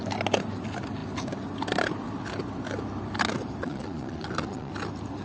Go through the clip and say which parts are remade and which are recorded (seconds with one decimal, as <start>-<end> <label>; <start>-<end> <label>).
0.0-3.6 recorded; 3.6-4.7 remade; 4.7-5.2 recorded